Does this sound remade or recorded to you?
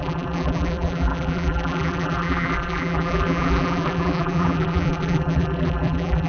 remade